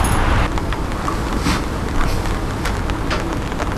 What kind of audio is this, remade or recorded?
recorded